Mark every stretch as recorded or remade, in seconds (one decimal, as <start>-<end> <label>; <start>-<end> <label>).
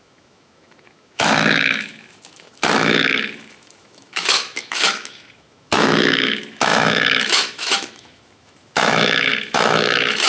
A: 0.0-10.3 remade